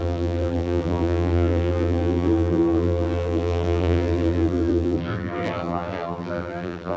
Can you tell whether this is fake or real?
fake